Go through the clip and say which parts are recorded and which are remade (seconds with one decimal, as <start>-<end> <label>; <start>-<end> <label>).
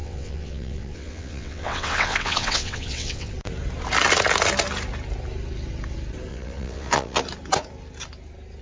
0.0-3.3 remade; 3.3-6.3 recorded; 6.3-7.2 remade; 7.2-8.6 recorded